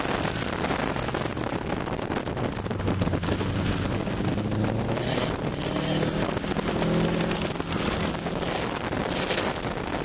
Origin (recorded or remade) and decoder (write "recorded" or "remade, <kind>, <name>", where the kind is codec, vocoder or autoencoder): recorded